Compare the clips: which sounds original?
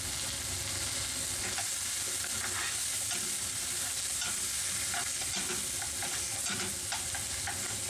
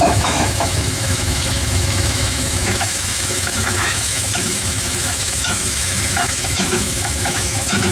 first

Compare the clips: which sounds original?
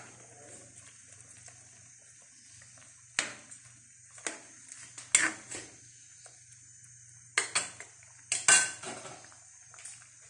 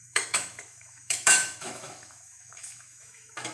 first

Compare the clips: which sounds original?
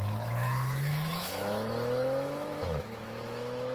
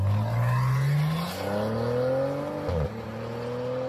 second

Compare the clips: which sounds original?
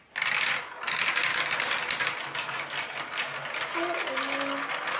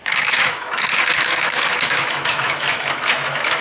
first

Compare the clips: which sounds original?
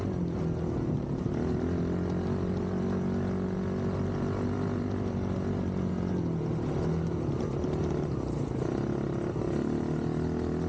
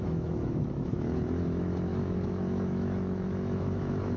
first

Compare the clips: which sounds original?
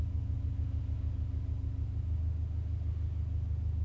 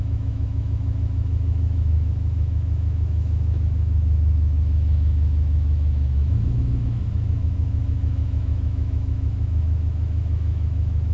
first